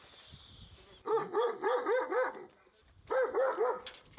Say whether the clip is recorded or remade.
recorded